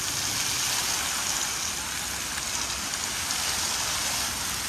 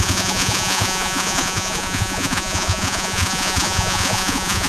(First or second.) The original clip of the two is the first